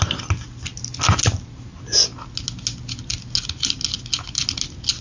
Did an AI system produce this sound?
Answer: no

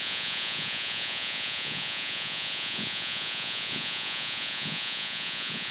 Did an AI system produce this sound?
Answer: yes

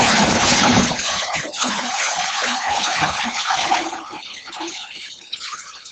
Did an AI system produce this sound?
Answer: yes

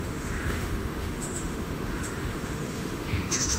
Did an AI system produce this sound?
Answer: yes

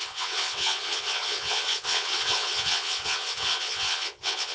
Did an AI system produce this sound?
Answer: yes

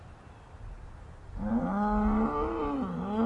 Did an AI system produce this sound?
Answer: no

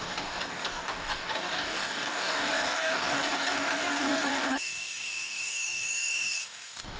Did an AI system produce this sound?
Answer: yes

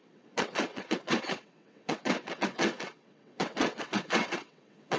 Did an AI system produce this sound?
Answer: yes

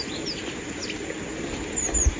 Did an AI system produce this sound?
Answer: no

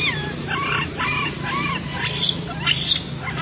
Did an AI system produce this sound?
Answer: no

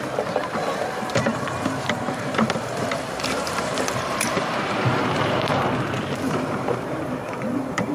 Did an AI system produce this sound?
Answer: yes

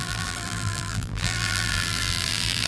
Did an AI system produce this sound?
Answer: yes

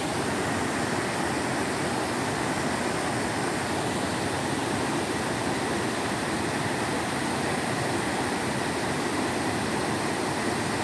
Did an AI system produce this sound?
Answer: no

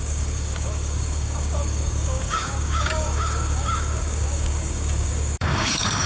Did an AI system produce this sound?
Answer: yes